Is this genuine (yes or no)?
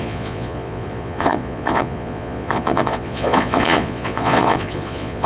no